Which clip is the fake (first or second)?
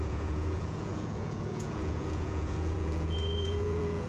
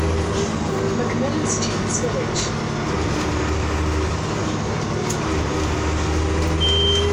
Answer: first